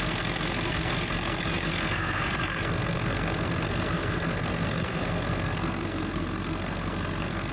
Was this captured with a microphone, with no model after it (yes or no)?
no